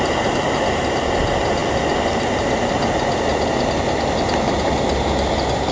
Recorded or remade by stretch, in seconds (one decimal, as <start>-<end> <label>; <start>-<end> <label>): 0.0-5.7 recorded